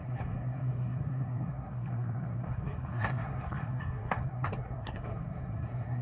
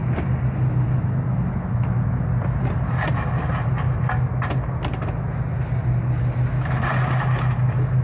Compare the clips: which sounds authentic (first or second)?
second